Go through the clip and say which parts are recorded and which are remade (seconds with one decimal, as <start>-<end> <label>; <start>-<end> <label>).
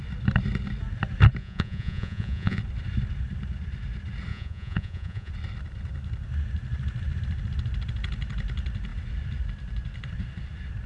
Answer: 0.0-1.4 recorded; 1.4-2.6 remade; 2.6-4.3 recorded; 4.3-5.3 remade; 5.3-10.9 recorded